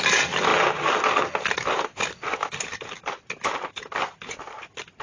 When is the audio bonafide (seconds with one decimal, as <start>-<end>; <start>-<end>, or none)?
0.0-5.0